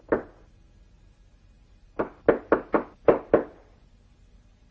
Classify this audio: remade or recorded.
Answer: recorded